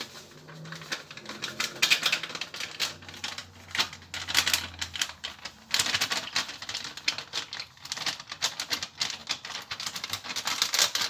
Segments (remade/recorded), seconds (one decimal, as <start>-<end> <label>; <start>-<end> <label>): 0.0-11.1 recorded